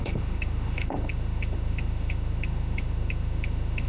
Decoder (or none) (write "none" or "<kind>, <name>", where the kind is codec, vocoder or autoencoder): autoencoder, DAC-VAE